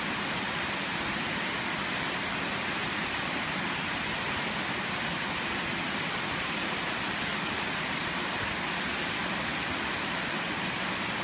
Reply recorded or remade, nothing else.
recorded